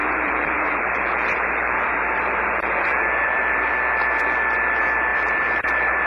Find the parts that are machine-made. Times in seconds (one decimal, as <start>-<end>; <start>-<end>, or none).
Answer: 0.0-3.7; 5.1-6.1